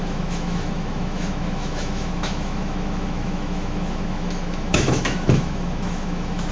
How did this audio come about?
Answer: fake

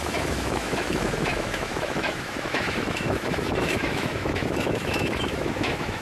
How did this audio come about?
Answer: fake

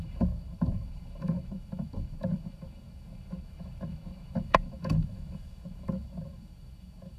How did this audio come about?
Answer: fake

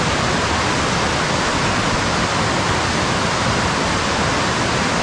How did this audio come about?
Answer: real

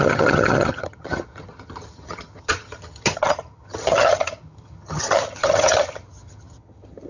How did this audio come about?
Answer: fake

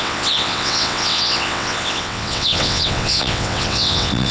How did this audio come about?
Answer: fake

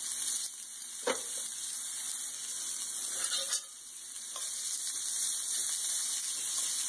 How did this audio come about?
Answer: real